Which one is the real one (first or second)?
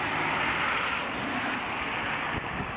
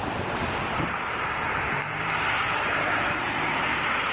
first